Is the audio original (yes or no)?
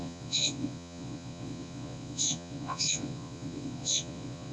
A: no